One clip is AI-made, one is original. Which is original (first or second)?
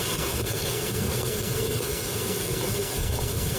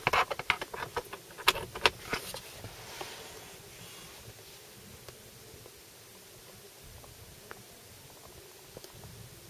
second